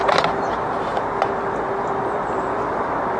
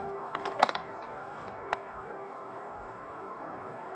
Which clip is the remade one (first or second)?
second